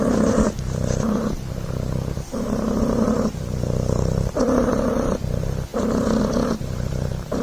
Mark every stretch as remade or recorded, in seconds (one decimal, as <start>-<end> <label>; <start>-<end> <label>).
0.0-7.4 remade